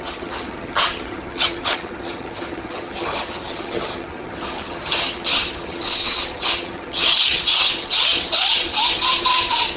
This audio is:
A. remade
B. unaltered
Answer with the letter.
A